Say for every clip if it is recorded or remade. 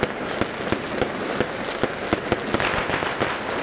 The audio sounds recorded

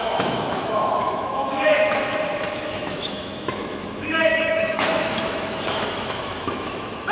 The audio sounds remade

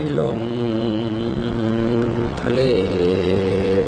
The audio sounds remade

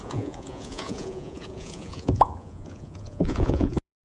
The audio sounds remade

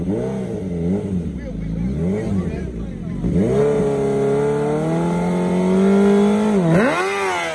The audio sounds recorded